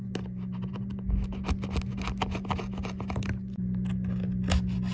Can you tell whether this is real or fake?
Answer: real